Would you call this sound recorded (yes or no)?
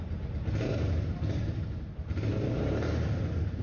yes